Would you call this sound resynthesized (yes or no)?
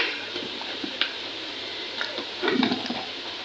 yes